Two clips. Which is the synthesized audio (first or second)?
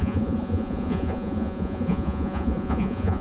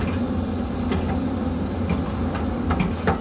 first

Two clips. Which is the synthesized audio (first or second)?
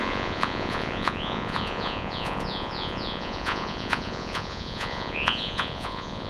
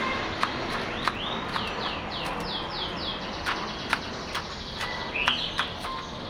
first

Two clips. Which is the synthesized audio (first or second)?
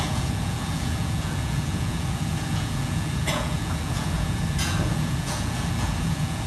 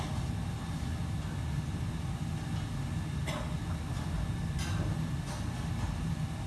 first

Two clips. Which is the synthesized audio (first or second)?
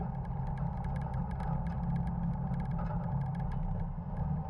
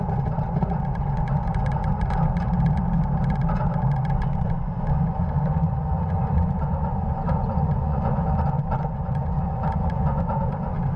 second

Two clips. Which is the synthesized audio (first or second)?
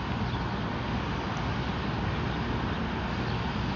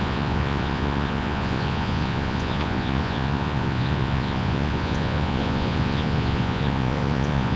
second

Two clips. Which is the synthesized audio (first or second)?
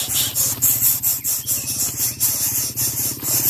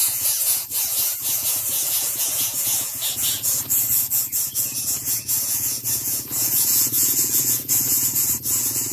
second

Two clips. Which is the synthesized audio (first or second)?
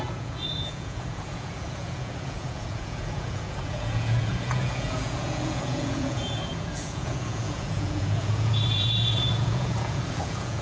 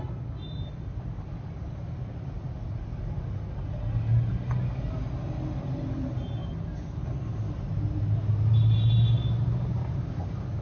first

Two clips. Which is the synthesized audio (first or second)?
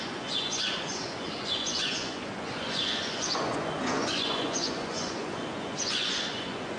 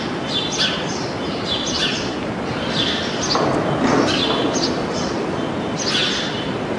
first